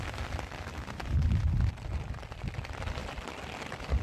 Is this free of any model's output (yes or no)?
yes